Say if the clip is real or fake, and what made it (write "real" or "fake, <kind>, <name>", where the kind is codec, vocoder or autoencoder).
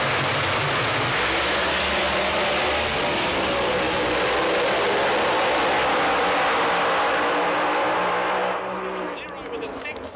real